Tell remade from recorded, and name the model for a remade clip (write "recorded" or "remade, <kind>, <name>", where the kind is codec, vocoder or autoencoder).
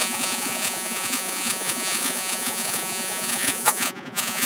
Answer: remade, vocoder, Vocos